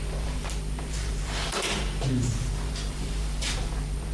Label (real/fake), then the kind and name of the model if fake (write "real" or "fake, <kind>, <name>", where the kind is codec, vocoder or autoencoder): fake, vocoder, BigVGAN v2